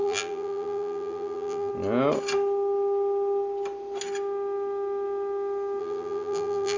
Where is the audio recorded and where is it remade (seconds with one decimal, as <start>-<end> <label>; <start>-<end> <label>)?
0.0-1.7 remade; 1.7-5.8 recorded; 5.8-6.8 remade